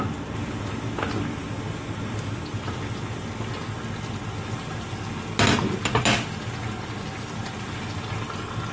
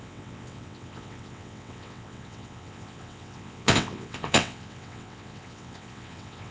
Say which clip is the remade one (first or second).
second